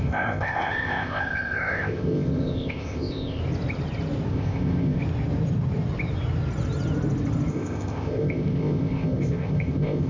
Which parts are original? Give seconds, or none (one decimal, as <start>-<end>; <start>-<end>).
3.4-4.3; 5.0-7.5